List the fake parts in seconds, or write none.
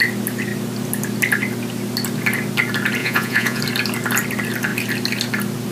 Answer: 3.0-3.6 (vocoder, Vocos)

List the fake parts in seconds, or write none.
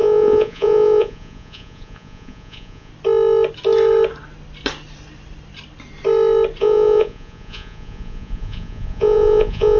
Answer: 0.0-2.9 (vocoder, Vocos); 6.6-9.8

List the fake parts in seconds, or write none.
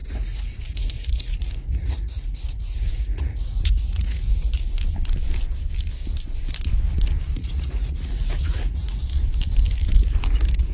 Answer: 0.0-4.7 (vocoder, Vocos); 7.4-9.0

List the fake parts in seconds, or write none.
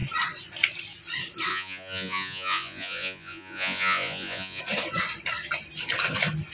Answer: 1.5-4.6 (vocoder, Vocos)